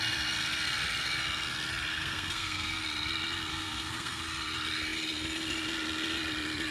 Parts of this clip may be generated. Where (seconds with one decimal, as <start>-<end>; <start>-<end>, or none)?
1.9-2.8; 3.5-4.2